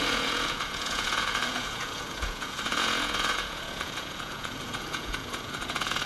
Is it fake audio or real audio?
fake